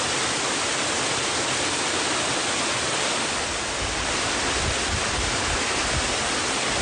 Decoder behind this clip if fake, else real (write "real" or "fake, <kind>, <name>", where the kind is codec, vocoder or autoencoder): real